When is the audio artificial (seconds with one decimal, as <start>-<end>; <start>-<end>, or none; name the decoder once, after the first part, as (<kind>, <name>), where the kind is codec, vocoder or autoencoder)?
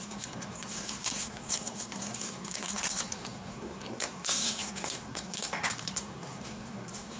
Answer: 0.0-7.2 (codec, SNAC)